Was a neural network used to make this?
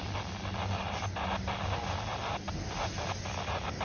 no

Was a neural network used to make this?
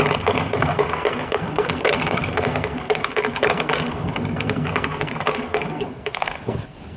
yes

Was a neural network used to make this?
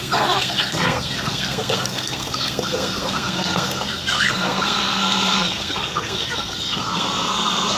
yes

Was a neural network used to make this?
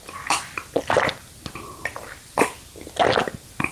no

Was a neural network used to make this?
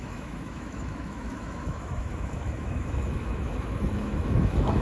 yes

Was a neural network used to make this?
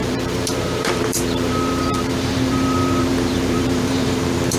yes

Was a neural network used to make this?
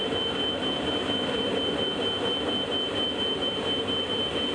no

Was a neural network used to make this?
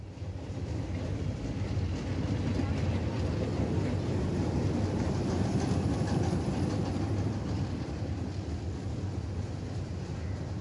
no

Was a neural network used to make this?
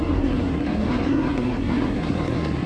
yes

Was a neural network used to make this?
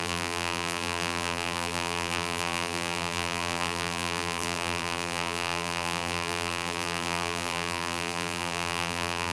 yes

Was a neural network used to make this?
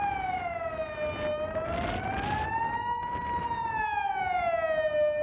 no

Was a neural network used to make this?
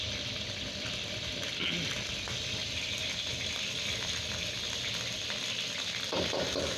no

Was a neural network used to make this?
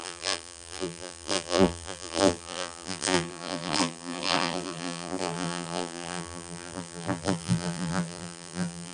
yes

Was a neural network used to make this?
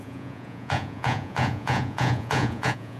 yes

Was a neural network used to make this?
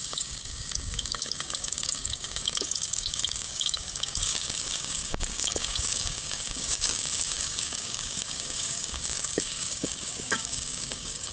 yes